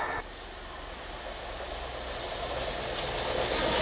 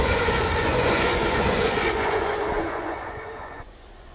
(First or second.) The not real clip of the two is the second